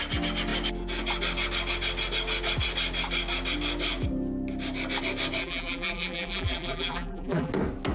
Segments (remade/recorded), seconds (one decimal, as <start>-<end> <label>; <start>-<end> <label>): 0.0-5.4 recorded; 5.4-7.5 remade; 7.5-7.9 recorded